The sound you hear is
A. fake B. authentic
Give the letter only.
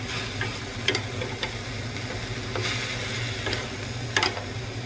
B